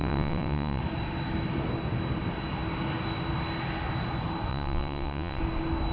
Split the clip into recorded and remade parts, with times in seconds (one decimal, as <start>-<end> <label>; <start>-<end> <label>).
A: 0.0-0.8 remade; 0.8-4.5 recorded; 4.5-5.4 remade; 5.4-5.9 recorded